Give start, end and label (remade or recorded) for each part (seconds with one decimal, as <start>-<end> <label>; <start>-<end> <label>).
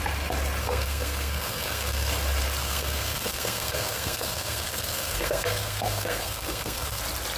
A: 0.0-0.6 recorded; 0.6-2.1 remade; 2.1-2.6 recorded; 2.6-7.0 remade; 7.0-7.4 recorded